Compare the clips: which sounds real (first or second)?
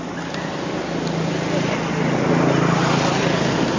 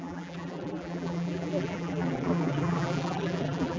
first